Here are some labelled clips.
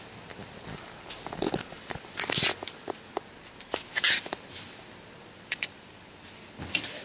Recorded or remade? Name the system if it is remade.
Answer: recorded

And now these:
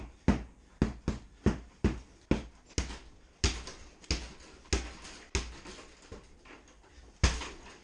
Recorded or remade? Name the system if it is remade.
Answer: recorded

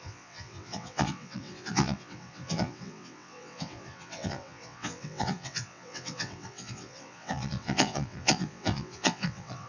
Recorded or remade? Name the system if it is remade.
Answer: remade, vocoder, WaveNeXt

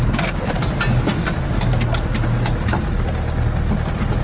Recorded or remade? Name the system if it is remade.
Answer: recorded